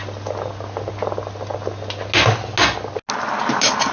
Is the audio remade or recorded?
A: recorded